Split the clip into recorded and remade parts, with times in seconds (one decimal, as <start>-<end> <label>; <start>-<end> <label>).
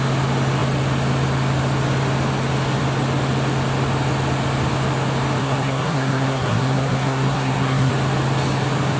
0.0-5.4 recorded; 5.4-7.9 remade; 7.9-9.0 recorded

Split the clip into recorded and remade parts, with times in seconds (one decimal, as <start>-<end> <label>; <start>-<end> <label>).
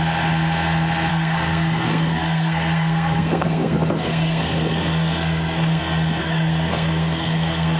0.0-1.1 recorded; 1.1-5.8 remade; 5.8-6.2 recorded; 6.2-7.8 remade